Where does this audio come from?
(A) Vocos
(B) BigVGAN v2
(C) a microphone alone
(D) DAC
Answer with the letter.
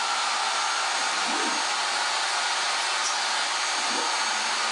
C